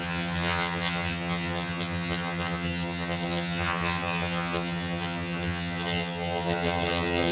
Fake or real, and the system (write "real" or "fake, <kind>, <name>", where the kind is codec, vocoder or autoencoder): fake, vocoder, HiFi-GAN